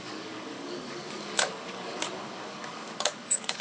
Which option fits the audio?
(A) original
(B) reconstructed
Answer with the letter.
B